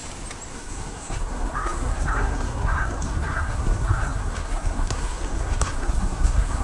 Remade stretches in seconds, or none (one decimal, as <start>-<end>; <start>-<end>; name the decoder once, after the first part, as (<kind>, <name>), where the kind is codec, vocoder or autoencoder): 0.5-6.6 (codec, SNAC)